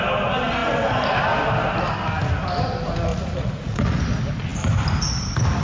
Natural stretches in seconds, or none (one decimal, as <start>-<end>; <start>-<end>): 0.0-3.1; 4.0-5.6